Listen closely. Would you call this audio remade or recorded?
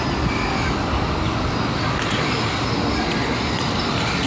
recorded